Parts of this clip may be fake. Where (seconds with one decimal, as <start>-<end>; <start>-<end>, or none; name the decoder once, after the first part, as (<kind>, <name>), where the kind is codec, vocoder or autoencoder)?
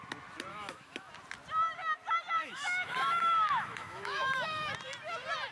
0.5-1.1 (autoencoder, DAC-VAE); 2.4-4.7